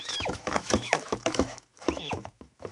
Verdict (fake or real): fake